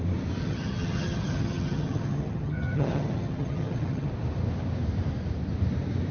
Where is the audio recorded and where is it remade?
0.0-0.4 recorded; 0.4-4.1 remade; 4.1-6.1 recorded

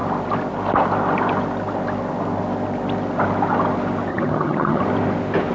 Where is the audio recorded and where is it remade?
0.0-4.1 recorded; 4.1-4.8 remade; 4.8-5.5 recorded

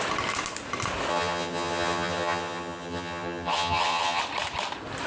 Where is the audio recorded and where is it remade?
0.0-1.1 recorded; 1.1-4.2 remade; 4.2-5.1 recorded

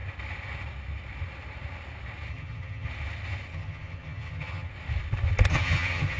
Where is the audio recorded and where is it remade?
0.0-2.3 recorded; 2.3-2.9 remade; 2.9-3.5 recorded; 3.5-4.7 remade; 4.7-5.5 recorded; 5.5-6.2 remade

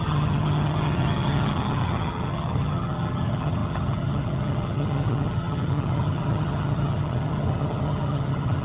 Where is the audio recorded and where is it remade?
0.0-8.6 remade

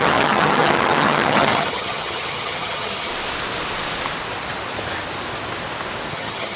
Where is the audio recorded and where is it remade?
0.0-3.1 remade; 3.1-6.1 recorded; 6.1-6.6 remade